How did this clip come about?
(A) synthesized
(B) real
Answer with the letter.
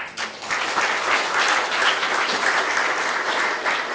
B